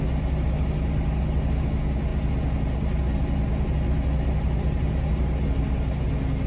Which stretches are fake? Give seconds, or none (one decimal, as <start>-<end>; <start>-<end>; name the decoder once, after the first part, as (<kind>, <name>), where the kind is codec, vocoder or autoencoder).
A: none